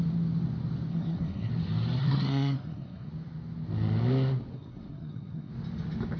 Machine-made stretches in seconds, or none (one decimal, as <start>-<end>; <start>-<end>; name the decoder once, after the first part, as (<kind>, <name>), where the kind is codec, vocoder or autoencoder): 0.9-1.5 (codec, SNAC); 2.0-3.1; 4.5-5.5